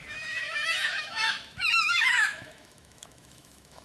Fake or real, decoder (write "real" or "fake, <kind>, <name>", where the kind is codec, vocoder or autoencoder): fake, autoencoder, DAC-VAE